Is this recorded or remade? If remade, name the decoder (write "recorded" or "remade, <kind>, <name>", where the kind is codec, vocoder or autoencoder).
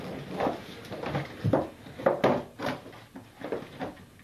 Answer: recorded